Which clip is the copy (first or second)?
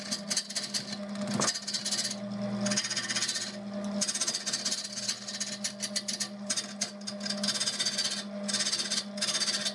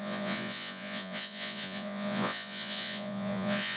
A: second